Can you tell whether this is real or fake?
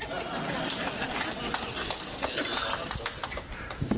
real